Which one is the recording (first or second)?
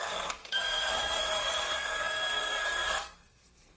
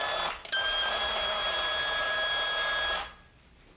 second